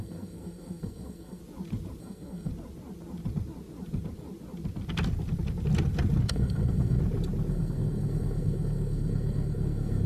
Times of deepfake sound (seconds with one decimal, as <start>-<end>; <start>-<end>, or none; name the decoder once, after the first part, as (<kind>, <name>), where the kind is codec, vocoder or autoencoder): 0.0-1.4 (codec, SNAC); 2.0-2.5; 6.3-7.0; 7.5-10.1